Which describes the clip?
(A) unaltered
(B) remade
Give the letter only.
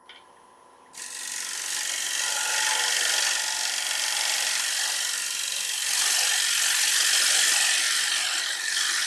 A